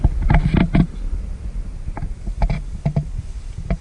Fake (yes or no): no